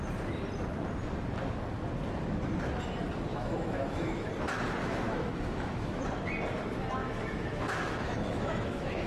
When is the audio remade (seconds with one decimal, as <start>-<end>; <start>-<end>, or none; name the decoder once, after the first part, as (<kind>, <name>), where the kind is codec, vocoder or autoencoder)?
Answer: 3.3-4.3 (autoencoder, DAC-VAE); 4.8-6.0; 7.0-9.1

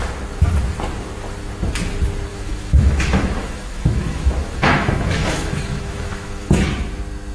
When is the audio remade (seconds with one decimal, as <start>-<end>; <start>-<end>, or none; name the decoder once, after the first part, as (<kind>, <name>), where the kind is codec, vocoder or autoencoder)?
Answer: 2.3-6.6 (autoencoder, DAC-VAE)

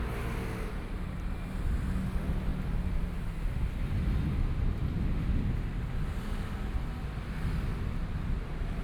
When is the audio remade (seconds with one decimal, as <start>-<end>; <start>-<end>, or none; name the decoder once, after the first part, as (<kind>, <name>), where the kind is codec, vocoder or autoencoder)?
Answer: none

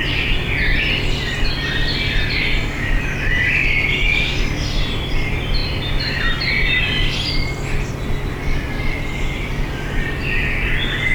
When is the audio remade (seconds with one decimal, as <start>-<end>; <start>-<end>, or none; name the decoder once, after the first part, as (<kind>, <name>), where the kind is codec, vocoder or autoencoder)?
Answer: none

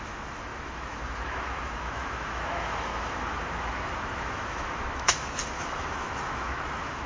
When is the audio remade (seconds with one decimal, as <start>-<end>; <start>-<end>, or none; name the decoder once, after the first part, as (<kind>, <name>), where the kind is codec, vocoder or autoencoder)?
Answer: 0.0-7.1 (autoencoder, DAC-VAE)

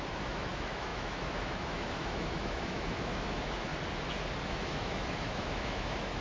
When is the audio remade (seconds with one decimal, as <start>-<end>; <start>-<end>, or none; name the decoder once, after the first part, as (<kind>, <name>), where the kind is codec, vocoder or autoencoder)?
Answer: 0.0-3.7 (autoencoder, DAC-VAE); 4.4-6.2

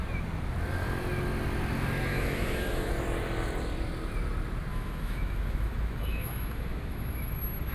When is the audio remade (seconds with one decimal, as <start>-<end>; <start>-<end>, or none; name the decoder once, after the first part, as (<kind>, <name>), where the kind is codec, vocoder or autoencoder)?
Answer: 2.1-2.9 (autoencoder, DAC-VAE); 4.7-7.3

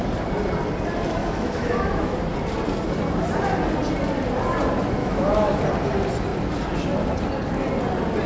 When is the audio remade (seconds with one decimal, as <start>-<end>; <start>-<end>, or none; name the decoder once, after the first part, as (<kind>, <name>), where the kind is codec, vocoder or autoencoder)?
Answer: 1.2-2.1 (autoencoder, DAC-VAE); 5.0-5.6